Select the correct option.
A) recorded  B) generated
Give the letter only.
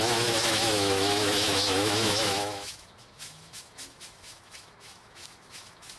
B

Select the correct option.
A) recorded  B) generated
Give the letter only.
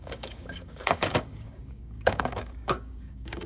B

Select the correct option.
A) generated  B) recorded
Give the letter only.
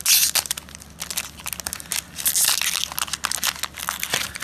B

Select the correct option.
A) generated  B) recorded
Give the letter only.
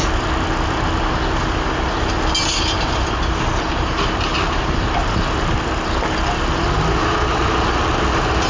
B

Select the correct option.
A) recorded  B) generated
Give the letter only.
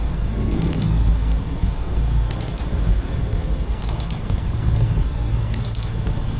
B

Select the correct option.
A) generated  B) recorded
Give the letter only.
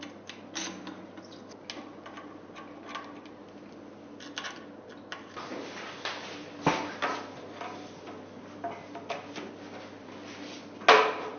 B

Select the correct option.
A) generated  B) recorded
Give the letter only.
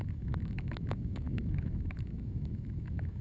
A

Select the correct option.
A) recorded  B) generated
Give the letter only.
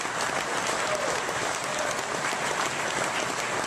A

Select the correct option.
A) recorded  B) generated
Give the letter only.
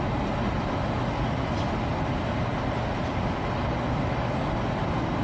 A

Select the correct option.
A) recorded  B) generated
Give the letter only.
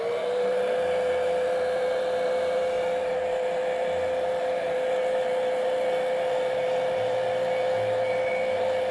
A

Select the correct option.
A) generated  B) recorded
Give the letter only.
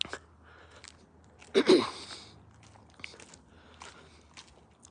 B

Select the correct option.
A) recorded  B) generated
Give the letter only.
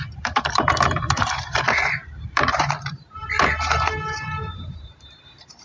B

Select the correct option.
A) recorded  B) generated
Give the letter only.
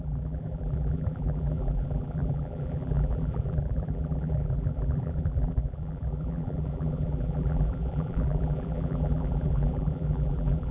B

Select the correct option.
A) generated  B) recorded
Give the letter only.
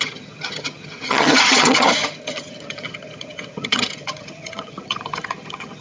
A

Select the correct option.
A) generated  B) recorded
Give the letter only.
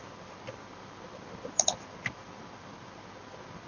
B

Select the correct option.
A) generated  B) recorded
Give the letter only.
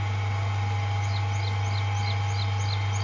B